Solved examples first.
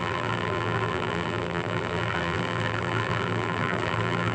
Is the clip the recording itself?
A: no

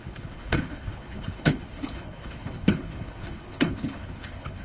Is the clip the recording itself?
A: no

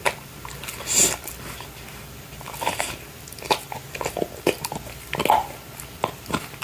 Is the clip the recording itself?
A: yes